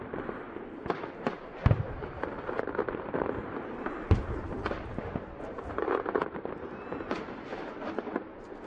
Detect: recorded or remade recorded